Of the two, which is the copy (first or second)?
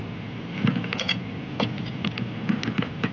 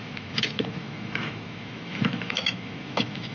second